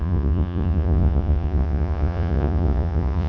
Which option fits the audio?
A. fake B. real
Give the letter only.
A